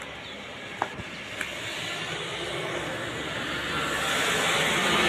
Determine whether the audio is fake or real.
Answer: real